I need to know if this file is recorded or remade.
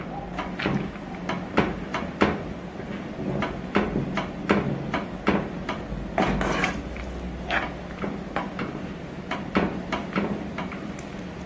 recorded